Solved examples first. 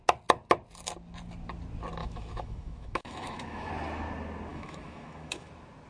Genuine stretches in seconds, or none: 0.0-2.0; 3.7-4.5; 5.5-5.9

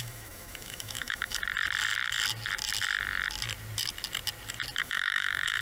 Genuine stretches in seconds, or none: 1.4-4.8

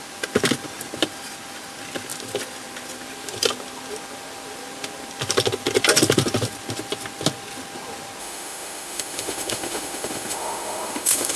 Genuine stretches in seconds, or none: 0.0-8.2

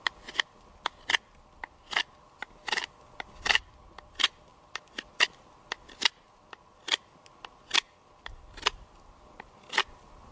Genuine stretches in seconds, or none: 0.0-10.3

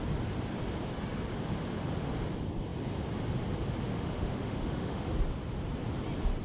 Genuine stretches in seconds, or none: 0.0-3.9; 5.1-6.4

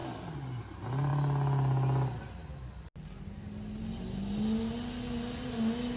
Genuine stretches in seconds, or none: 0.0-6.0